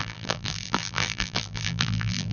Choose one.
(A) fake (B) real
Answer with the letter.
A